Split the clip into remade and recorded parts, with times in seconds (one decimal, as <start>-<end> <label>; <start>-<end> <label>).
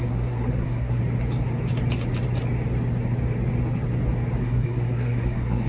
0.0-1.0 remade; 1.0-4.4 recorded; 4.4-5.7 remade